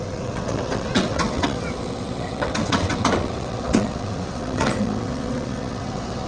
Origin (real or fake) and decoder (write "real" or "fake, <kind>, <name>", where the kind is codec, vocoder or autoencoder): fake, vocoder, WaveNeXt